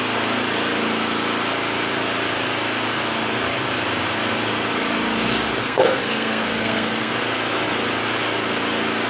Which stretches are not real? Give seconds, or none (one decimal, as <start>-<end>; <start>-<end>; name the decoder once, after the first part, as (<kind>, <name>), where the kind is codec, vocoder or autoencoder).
5.6-7.1 (codec, SNAC)